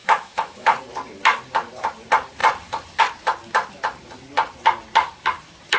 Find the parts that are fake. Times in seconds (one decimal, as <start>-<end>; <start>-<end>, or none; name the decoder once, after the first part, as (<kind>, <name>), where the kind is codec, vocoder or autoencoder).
0.0-0.8 (autoencoder, DAC-VAE)